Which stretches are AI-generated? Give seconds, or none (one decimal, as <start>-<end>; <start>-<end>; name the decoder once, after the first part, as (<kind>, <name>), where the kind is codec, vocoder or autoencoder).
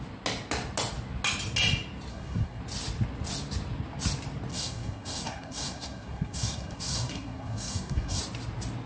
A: 2.1-2.6 (codec, SNAC); 4.5-8.2